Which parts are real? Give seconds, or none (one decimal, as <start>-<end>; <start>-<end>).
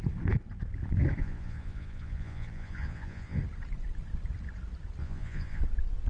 0.0-1.2; 3.4-5.0; 5.6-6.1